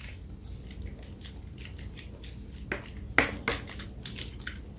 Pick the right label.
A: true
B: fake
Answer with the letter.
A